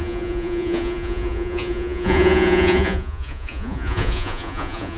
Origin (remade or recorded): remade